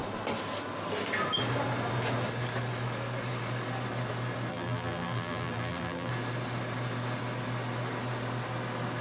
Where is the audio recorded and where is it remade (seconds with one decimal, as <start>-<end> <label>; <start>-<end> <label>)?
0.0-4.5 recorded; 4.5-6.1 remade; 6.1-9.0 recorded